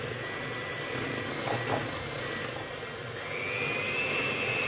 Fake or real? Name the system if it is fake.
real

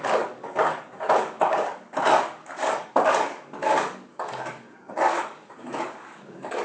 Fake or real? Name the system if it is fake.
fake, codec, DAC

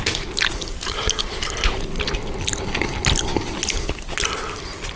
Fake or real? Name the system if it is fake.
real